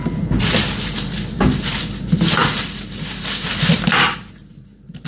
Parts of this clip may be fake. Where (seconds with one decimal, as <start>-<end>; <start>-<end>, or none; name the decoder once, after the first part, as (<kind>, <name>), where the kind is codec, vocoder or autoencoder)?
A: none